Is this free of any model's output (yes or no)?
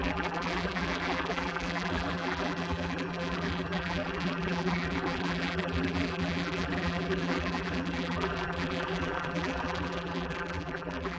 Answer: no